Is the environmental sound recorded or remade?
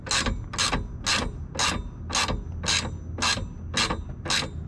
recorded